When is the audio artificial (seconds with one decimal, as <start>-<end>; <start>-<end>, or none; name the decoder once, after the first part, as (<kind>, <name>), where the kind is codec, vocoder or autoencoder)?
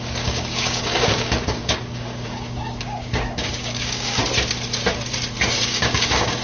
0.0-4.2 (codec, DAC); 5.5-6.4